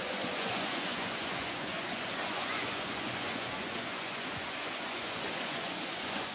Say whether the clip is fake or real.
fake